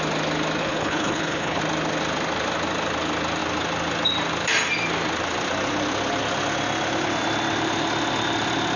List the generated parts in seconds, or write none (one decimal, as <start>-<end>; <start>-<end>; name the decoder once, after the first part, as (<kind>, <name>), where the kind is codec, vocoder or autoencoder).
0.6-1.6 (codec, HILCodec)